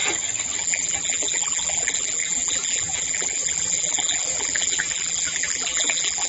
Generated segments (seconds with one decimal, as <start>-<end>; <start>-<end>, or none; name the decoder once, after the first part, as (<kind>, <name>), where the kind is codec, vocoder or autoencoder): 0.6-6.3 (vocoder, BigVGAN v2)